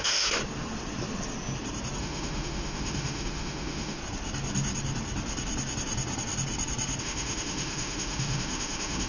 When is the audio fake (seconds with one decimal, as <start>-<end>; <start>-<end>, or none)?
0.0-0.4; 2.0-4.0; 7.0-9.1